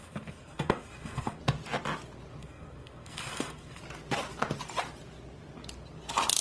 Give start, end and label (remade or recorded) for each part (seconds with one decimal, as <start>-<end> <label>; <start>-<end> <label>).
0.0-1.4 remade; 1.4-2.4 recorded; 2.4-3.8 remade; 3.8-6.4 recorded